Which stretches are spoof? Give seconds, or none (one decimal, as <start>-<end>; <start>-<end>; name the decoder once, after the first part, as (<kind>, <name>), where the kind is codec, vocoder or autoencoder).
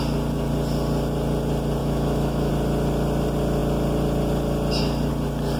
1.8-2.5 (autoencoder, DAC-VAE)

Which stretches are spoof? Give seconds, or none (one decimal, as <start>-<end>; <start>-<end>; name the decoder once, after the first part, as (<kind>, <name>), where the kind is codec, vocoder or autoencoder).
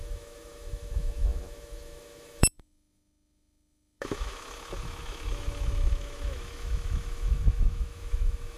0.0-8.6 (autoencoder, DAC-VAE)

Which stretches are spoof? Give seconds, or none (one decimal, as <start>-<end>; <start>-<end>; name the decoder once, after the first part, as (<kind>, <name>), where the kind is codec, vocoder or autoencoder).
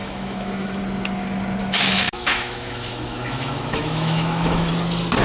0.0-0.8 (autoencoder, DAC-VAE); 1.6-4.7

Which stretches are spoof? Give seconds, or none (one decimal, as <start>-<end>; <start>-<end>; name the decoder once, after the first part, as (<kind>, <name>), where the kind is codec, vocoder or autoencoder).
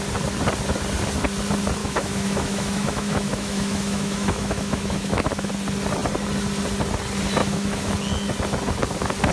1.8-5.5 (autoencoder, DAC-VAE); 7.4-7.9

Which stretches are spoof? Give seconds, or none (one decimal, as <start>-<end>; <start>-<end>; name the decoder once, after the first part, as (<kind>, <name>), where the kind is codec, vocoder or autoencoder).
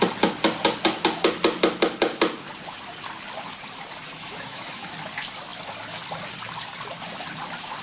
4.1-4.9 (autoencoder, DAC-VAE)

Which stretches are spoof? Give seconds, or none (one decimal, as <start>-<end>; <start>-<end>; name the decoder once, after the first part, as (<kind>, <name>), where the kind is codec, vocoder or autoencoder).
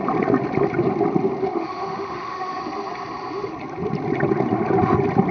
1.4-2.6 (autoencoder, DAC-VAE)